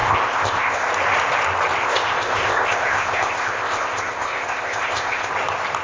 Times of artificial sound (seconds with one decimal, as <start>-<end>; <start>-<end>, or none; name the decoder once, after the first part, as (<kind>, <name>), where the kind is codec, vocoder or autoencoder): 0.0-0.9 (codec, ZipCodec); 1.8-5.3